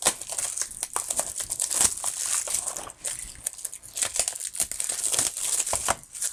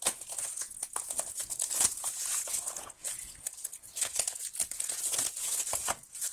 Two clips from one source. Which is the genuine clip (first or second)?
first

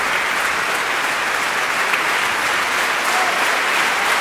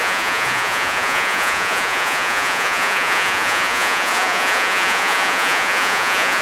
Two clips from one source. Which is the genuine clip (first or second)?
first